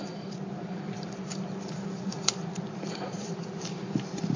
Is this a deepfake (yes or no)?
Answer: yes